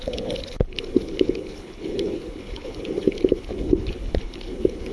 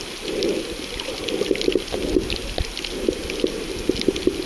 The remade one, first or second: first